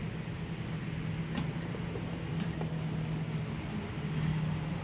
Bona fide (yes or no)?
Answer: yes